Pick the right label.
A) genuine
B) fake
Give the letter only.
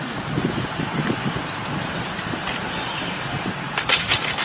B